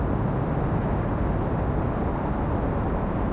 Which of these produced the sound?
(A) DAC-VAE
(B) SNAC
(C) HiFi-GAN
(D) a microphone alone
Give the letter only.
D